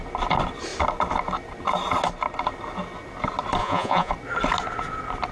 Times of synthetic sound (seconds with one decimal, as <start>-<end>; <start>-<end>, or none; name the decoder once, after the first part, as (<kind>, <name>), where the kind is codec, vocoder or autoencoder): 3.6-4.1 (vocoder, Vocos)